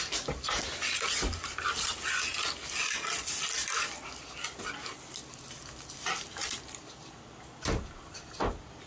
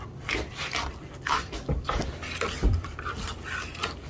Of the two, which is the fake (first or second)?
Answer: second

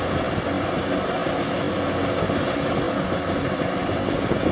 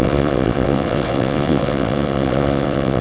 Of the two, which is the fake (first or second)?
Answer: second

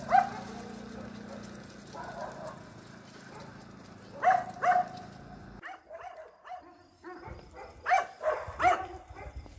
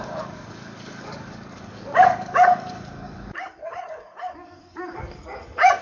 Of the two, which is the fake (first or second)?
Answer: second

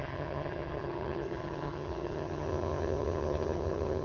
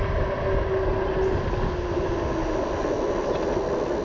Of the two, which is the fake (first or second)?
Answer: first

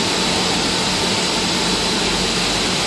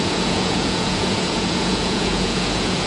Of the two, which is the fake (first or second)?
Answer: second